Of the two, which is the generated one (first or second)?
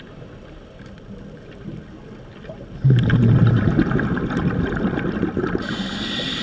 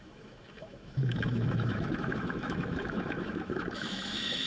second